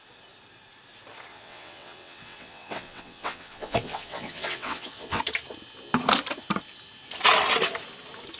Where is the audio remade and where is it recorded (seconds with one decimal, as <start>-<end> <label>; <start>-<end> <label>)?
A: 0.0-1.3 recorded; 1.3-5.2 remade; 5.2-8.4 recorded